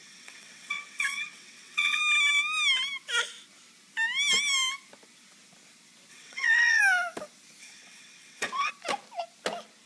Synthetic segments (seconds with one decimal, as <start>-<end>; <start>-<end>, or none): 0.0-2.0; 6.1-6.8; 7.6-8.7